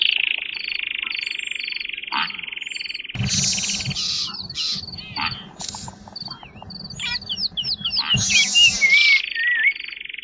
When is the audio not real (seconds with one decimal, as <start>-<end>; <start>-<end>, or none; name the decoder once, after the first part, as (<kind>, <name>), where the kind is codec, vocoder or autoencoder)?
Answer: none